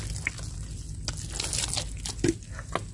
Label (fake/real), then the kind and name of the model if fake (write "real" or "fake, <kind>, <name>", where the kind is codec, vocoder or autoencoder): real